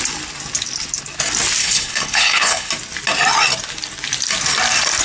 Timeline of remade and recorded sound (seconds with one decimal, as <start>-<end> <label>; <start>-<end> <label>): 0.0-1.6 recorded; 1.6-2.7 remade; 2.7-5.0 recorded